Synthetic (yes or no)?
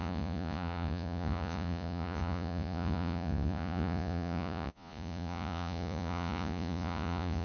yes